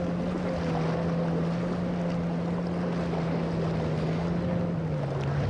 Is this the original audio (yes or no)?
yes